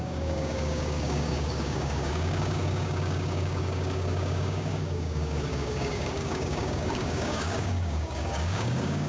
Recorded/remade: remade